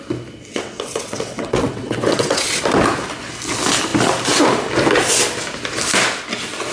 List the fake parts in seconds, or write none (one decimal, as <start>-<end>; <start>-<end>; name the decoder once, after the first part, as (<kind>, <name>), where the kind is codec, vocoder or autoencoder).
0.5-2.6 (vocoder, WaveNeXt)

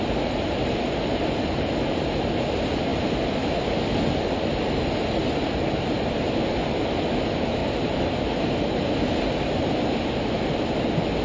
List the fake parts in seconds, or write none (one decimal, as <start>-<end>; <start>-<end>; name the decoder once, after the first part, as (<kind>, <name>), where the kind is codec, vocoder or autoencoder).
none